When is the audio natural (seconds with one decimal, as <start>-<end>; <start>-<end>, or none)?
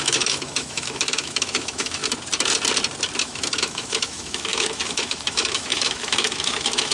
2.0-3.2